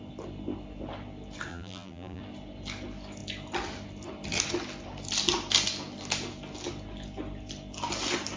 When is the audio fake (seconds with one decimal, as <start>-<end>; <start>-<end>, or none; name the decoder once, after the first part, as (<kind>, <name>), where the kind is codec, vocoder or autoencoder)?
1.5-2.2 (vocoder, BigVGAN v2)